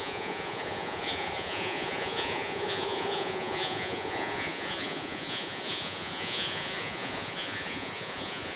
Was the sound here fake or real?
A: fake